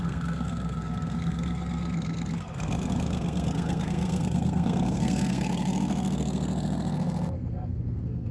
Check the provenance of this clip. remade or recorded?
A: remade